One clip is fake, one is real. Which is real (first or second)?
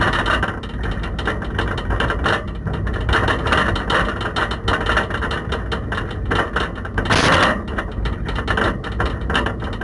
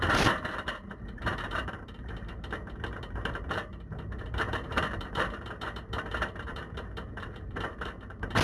first